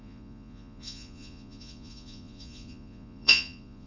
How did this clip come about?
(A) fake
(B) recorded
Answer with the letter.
A